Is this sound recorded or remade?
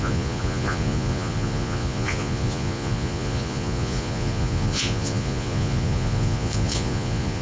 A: remade